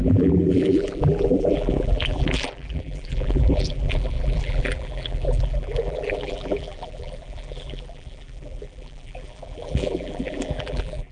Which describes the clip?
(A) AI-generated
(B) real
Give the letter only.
A